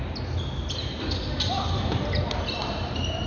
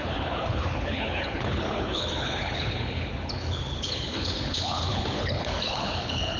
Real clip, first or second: first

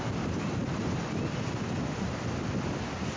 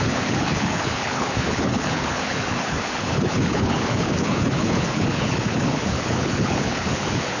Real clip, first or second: first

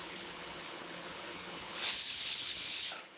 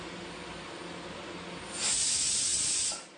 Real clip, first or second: second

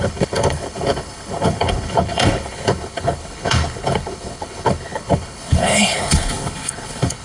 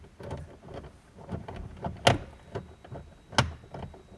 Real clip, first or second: second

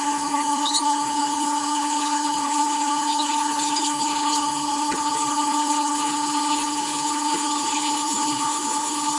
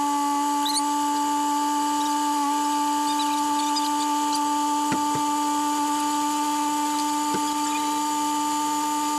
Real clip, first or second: second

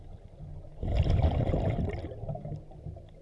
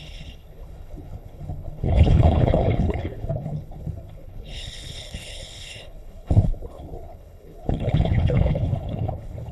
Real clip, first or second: first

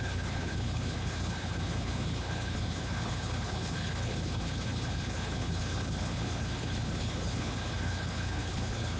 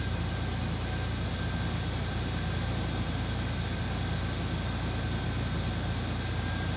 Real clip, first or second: second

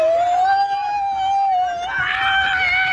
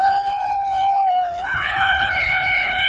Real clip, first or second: first